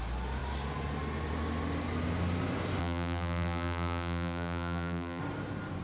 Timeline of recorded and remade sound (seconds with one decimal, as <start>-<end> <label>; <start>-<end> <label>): 0.0-2.8 recorded; 2.8-5.2 remade; 5.2-5.8 recorded